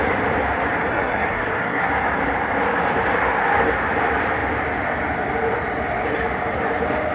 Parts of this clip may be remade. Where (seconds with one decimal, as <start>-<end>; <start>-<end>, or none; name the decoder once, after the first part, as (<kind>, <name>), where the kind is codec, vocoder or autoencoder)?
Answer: 0.9-1.9 (codec, SNAC)